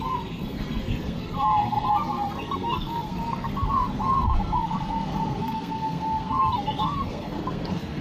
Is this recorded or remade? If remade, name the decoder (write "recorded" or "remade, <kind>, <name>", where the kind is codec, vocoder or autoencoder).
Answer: remade, codec, SNAC